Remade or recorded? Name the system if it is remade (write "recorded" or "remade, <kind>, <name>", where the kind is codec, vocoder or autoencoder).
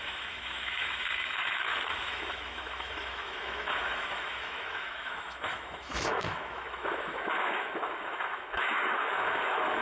remade, autoencoder, DAC-VAE